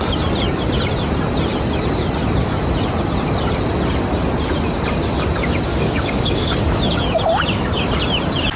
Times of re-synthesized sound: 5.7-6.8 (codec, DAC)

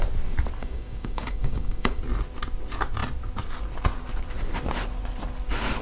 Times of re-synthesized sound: 0.6-2.0 (codec, DAC)